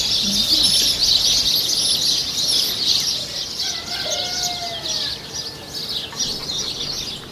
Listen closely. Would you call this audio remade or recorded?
recorded